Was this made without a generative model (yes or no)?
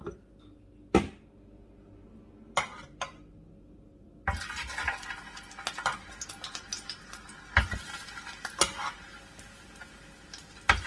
yes